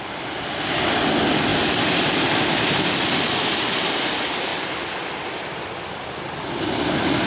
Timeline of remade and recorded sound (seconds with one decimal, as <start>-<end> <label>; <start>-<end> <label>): 0.0-1.5 recorded; 1.5-2.6 remade; 2.6-4.5 recorded; 4.5-5.6 remade; 5.6-7.3 recorded